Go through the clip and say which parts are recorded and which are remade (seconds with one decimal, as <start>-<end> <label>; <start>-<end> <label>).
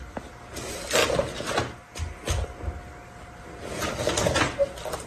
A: 0.0-5.1 recorded